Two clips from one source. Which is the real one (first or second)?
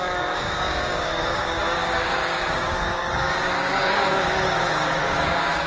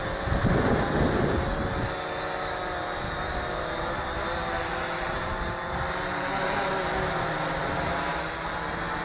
second